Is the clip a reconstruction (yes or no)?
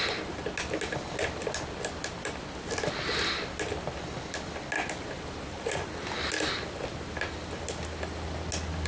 no